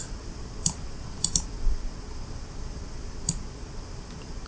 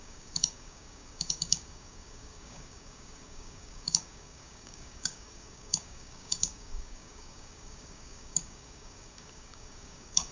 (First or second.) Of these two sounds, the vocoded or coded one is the second